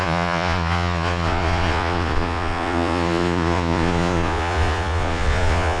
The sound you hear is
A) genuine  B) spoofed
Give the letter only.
B